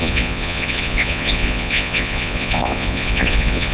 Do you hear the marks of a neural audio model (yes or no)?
yes